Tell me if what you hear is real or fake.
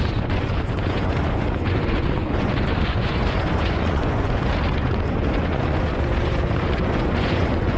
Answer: fake